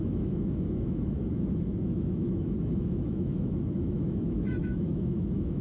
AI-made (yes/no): yes